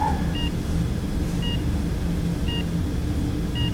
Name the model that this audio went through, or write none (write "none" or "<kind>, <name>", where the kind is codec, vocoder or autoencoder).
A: none